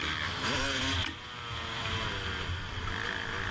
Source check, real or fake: real